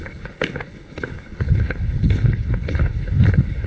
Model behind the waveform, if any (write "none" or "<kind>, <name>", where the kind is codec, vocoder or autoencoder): codec, HILCodec